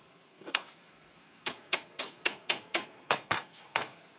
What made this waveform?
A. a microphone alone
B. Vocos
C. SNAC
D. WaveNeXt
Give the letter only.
C